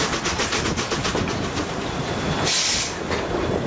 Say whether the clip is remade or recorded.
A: recorded